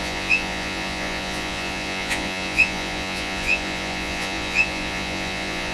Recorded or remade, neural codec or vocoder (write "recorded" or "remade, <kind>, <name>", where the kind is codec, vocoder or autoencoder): remade, vocoder, Vocos